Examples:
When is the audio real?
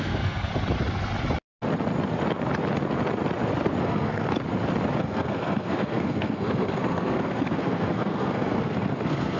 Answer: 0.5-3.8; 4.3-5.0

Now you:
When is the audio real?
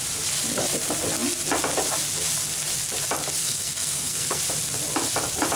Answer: 0.0-3.4; 4.4-5.6